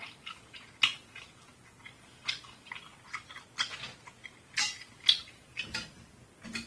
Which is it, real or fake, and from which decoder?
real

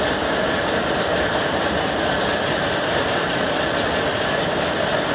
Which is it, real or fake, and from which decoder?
fake, vocoder, BigVGAN v2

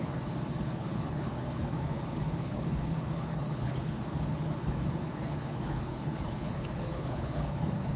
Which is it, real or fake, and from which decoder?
fake, codec, HILCodec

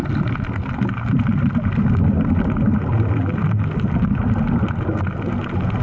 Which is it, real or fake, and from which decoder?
real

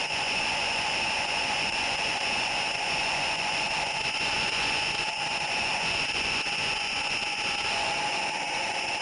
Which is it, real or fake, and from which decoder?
fake, vocoder, Vocos